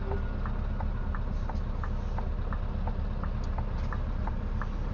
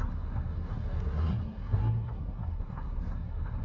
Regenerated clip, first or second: second